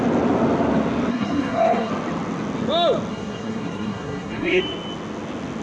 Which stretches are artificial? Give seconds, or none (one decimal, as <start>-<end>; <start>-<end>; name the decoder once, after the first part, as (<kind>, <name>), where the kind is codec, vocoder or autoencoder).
1.1-1.9 (codec, SNAC); 3.1-4.6